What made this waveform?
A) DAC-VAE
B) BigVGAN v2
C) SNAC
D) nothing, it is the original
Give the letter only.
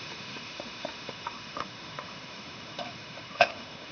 A